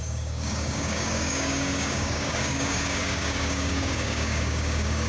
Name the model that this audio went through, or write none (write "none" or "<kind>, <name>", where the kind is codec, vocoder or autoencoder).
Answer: codec, DAC